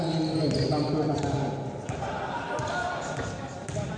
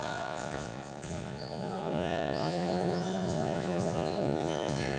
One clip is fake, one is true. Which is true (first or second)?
first